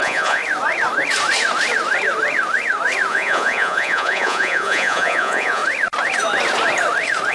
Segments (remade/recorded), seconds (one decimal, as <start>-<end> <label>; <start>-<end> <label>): 0.0-0.4 remade; 0.4-3.1 recorded; 3.1-5.6 remade; 5.6-7.3 recorded

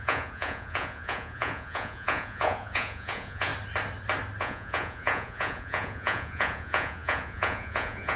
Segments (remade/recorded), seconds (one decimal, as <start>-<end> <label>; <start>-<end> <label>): 0.0-3.5 remade; 3.5-4.4 recorded; 4.4-8.2 remade

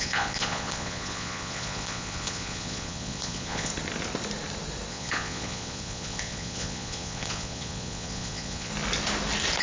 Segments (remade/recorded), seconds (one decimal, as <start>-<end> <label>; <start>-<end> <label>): 0.0-3.7 remade; 3.7-4.9 recorded; 4.9-8.7 remade; 8.7-9.6 recorded

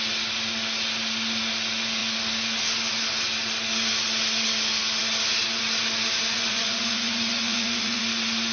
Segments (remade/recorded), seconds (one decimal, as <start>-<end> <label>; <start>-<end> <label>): 0.0-6.3 recorded; 6.3-8.0 remade; 8.0-8.5 recorded

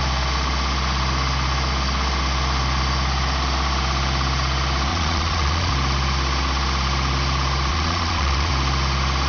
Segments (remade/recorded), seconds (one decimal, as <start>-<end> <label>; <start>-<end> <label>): 0.0-4.9 recorded; 4.9-5.7 remade; 5.7-7.7 recorded; 7.7-8.5 remade; 8.5-9.3 recorded